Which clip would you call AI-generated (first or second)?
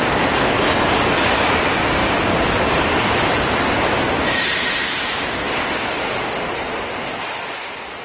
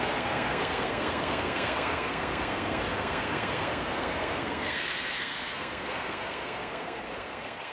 second